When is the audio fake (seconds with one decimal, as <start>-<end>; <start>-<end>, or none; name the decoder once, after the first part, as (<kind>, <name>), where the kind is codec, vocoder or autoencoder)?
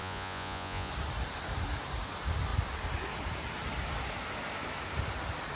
0.0-0.9 (vocoder, Vocos)